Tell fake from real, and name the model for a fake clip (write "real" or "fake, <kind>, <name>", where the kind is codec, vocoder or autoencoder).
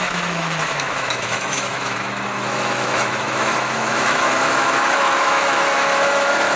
fake, autoencoder, DAC-VAE